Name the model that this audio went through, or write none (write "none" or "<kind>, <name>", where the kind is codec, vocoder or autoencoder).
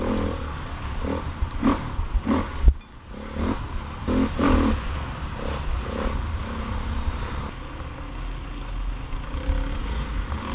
none